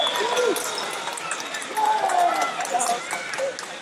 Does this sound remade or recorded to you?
recorded